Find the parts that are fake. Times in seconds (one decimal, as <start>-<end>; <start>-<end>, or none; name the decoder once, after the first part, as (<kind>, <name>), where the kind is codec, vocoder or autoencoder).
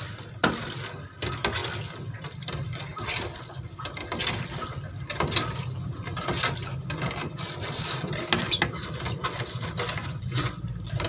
10.0-10.6 (vocoder, Vocos)